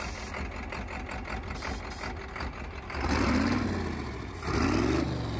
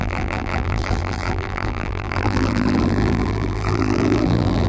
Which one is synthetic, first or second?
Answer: second